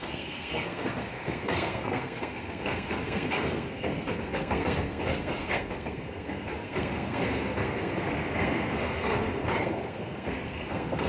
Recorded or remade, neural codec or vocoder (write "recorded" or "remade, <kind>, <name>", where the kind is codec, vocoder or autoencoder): remade, codec, SNAC